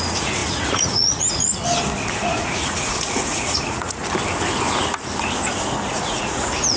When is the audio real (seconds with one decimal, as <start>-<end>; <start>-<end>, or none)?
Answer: 1.6-2.2; 4.0-5.9